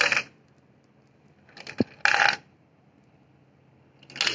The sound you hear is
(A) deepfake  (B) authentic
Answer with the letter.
B